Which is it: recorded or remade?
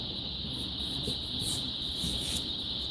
recorded